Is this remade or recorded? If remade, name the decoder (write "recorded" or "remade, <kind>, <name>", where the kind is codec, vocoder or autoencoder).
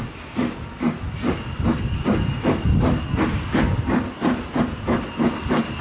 recorded